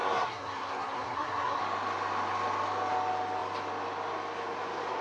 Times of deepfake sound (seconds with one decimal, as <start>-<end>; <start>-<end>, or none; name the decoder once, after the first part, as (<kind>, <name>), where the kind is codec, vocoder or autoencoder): 0.0-1.6 (codec, SNAC)